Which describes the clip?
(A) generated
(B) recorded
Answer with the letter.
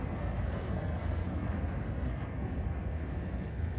A